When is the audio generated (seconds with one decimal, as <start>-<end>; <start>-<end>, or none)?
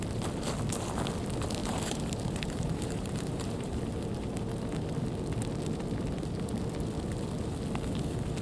1.6-3.8